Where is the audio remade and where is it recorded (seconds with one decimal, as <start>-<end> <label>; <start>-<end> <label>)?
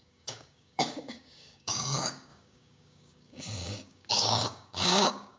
0.0-5.4 remade